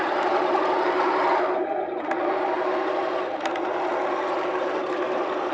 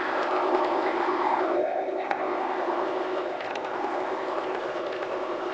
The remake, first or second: second